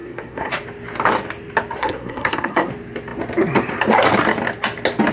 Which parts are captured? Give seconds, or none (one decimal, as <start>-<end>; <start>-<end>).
0.5-1.8; 2.7-5.1